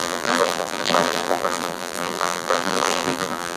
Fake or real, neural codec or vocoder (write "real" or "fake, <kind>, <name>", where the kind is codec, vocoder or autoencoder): fake, vocoder, BigVGAN v2